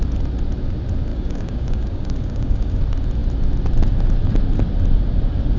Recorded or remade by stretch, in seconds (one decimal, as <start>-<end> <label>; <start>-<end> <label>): 0.0-1.1 recorded; 1.1-2.8 remade; 2.8-5.6 recorded